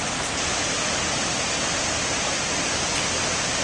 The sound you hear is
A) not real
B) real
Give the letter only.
B